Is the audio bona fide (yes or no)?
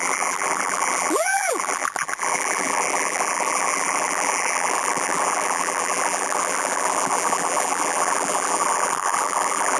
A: no